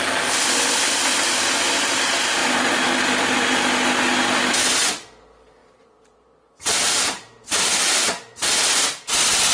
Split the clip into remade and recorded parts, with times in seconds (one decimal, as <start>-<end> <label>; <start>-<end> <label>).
0.0-5.6 recorded; 5.6-8.5 remade; 8.5-9.5 recorded